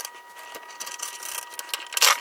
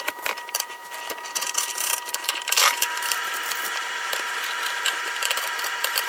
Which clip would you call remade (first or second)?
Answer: second